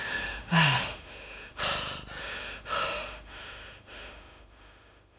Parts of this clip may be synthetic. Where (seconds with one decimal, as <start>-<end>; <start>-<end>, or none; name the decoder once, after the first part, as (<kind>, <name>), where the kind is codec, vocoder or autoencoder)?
0.0-1.6 (autoencoder, DAC-VAE); 2.2-5.2